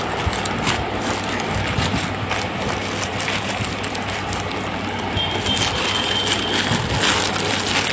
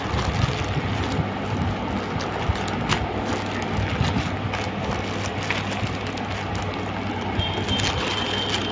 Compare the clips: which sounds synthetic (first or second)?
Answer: first